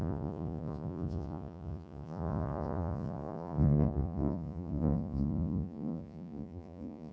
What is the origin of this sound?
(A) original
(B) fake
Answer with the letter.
B